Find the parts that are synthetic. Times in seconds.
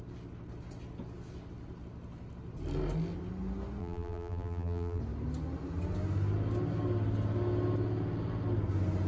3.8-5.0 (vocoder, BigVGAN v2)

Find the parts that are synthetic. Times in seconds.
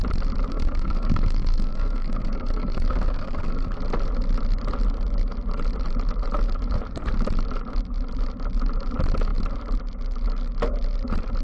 0.5-3.8 (codec, SNAC)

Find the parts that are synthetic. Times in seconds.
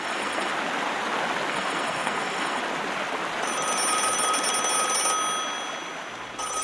0.0-0.5 (codec, SNAC); 1.5-2.6